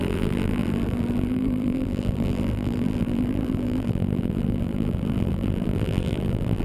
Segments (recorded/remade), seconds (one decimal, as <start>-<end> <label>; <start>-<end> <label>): 0.0-6.6 remade